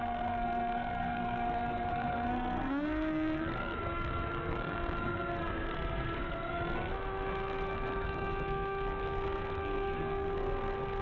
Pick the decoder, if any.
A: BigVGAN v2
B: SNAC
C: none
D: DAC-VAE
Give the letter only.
B